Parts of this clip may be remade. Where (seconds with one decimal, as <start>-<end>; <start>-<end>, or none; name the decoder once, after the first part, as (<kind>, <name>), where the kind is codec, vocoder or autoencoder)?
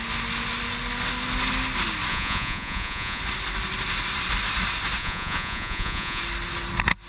2.1-3.2 (vocoder, Vocos); 5.0-6.2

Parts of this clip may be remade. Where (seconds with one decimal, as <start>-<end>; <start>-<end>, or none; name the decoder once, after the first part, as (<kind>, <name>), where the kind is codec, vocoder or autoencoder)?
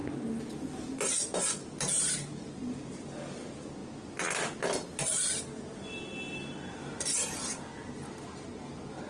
none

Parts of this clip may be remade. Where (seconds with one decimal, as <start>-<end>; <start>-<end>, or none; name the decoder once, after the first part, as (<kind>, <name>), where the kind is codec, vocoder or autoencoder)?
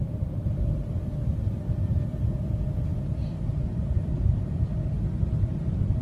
1.9-4.8 (vocoder, BigVGAN v2)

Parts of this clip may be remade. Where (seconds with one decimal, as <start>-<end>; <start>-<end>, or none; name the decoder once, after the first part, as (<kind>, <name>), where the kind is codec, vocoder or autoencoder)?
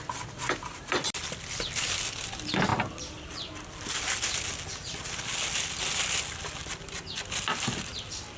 none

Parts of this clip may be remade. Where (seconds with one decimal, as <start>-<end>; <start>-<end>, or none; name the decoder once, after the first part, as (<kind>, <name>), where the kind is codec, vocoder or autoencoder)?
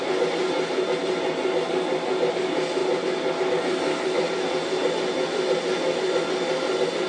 none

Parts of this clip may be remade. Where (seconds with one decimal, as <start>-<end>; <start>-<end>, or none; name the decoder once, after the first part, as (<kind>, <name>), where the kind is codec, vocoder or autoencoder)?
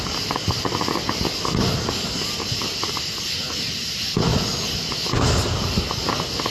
none